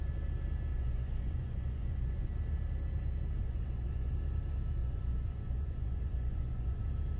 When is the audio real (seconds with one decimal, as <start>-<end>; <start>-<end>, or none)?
0.0-0.7; 2.3-3.4; 4.1-4.8; 6.8-7.2